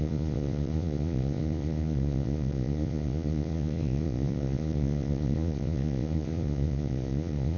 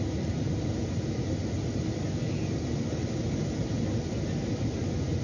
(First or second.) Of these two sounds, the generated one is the first